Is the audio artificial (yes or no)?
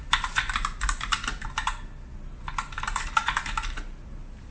no